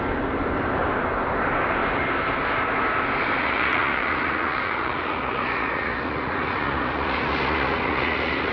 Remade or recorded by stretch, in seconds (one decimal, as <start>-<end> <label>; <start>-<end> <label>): 0.0-3.4 recorded; 3.4-8.5 remade